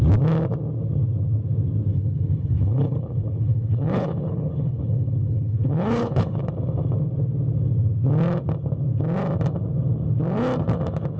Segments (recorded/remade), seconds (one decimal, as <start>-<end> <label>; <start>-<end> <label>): 0.0-1.9 recorded; 1.9-6.4 remade; 6.4-11.2 recorded